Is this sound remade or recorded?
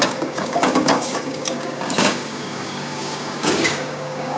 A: remade